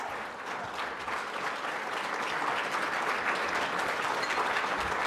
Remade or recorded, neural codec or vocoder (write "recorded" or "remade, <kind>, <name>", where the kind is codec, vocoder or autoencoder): recorded